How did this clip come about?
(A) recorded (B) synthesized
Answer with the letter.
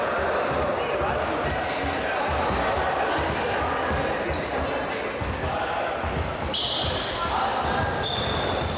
A